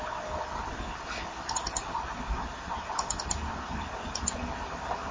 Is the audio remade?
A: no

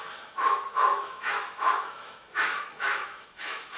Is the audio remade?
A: yes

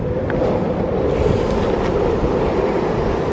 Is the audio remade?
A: no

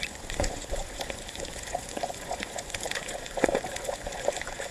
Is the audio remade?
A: yes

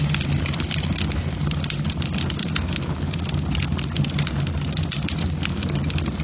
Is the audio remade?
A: no